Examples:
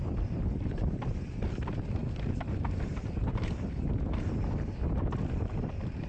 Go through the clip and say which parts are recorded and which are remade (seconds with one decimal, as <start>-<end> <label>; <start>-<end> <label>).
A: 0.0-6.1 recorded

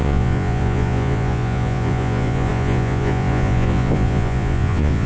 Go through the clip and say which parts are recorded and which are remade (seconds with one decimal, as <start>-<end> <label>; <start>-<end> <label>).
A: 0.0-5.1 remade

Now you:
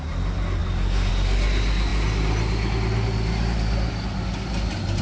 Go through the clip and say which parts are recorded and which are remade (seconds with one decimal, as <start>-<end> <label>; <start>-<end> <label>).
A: 0.0-5.0 recorded